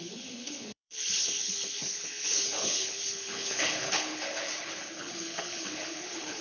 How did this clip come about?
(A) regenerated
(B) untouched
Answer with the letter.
A